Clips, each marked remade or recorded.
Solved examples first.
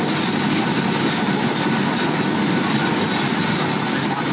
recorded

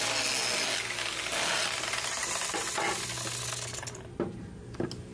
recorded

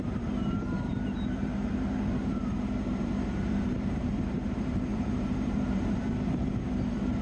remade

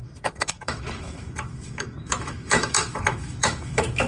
remade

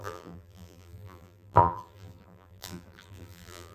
remade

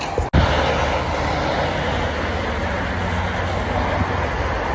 recorded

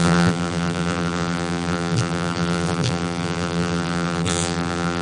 remade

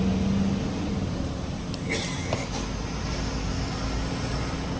recorded